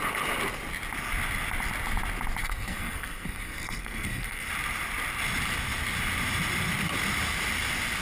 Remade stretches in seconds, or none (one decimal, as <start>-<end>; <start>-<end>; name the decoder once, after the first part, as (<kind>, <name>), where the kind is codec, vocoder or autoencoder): 2.4-4.5 (codec, SNAC)